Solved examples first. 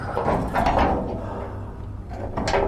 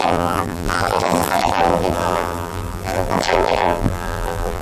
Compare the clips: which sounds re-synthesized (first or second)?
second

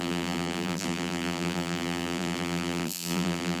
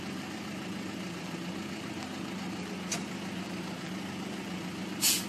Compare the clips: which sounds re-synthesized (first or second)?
first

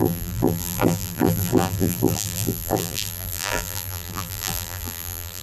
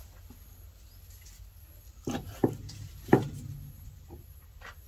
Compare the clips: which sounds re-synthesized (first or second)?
first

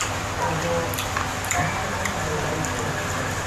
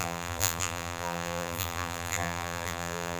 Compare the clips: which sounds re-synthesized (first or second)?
second